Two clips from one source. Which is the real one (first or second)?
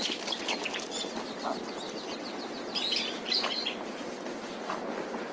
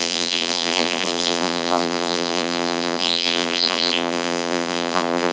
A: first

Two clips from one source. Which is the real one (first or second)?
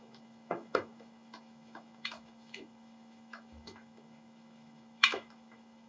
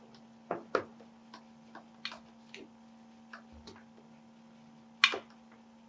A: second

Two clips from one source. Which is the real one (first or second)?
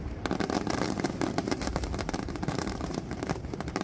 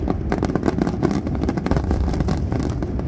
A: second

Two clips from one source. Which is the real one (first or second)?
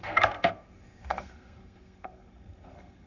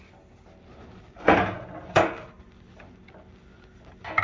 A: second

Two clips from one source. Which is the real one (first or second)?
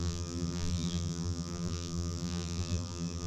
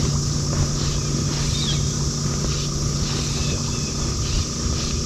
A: second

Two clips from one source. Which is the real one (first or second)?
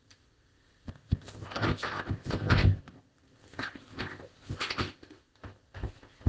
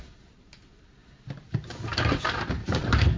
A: second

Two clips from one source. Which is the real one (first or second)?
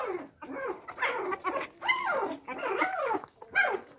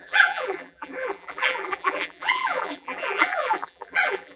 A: first